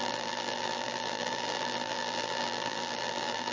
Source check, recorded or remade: remade